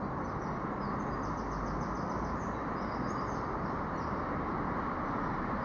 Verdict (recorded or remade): recorded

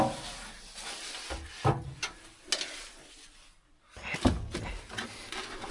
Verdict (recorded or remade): recorded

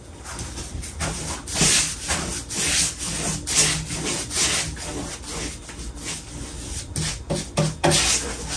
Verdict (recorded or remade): recorded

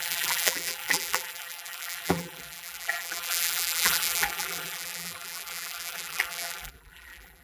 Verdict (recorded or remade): remade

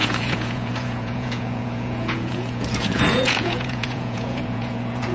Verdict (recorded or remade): remade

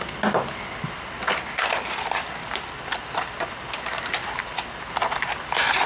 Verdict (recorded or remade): recorded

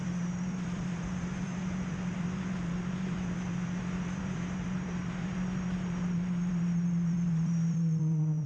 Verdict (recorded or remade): remade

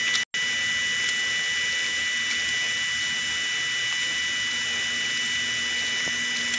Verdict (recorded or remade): recorded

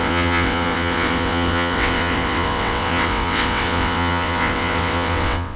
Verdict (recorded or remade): remade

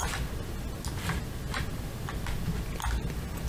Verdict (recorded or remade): recorded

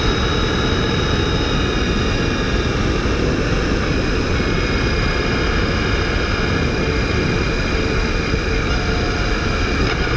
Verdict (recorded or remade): recorded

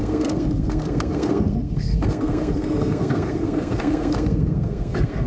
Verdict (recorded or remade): remade